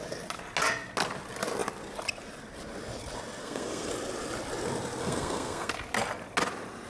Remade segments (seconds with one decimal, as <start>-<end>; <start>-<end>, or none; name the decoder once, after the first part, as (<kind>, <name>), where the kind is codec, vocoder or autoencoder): 3.4-3.9 (codec, SNAC); 5.0-5.7